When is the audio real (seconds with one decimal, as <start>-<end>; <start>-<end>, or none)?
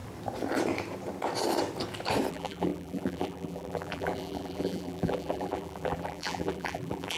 0.0-2.3